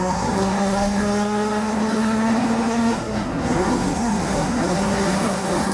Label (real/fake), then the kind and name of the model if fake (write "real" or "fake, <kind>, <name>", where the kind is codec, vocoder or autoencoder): fake, codec, SNAC